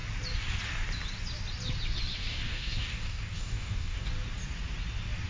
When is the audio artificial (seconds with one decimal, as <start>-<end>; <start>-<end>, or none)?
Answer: 2.2-4.1